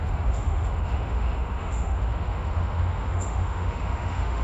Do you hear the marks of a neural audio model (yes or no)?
yes